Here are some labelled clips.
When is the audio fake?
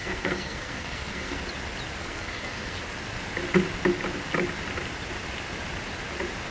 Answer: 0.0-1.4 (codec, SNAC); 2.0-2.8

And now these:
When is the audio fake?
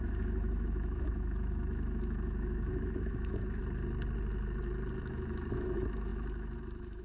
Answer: 0.0-3.6 (autoencoder, DAC-VAE); 5.0-7.0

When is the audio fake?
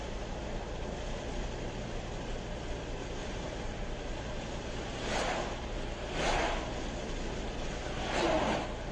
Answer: 3.2-5.8 (vocoder, BigVGAN v2)